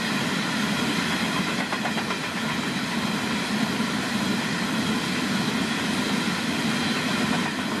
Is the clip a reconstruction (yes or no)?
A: no